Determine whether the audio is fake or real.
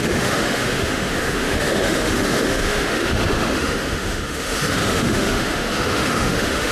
fake